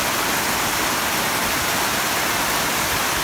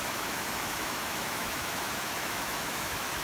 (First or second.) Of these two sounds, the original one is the first